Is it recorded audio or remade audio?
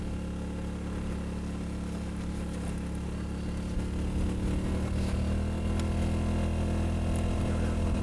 recorded